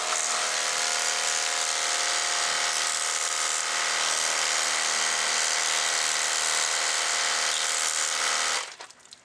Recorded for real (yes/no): yes